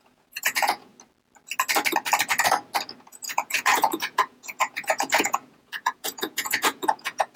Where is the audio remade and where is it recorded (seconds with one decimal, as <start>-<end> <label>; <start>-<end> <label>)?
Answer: 0.0-0.9 remade; 0.9-3.1 recorded; 3.1-7.4 remade